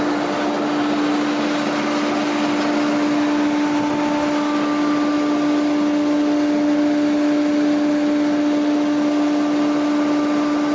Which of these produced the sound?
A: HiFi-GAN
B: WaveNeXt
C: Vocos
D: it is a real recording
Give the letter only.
D